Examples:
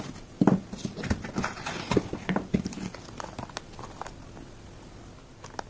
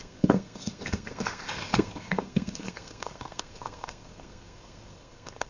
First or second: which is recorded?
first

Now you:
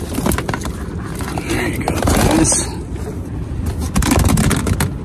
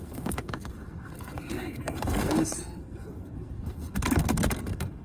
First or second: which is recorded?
first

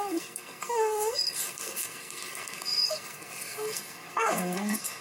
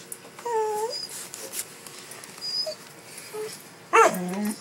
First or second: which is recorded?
second